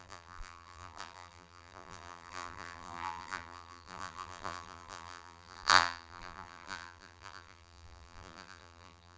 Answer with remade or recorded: remade